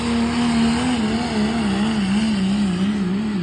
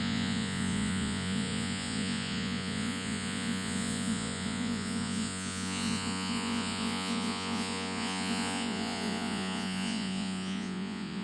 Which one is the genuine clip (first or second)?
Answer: first